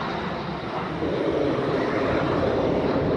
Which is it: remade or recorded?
recorded